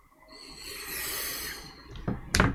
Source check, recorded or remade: recorded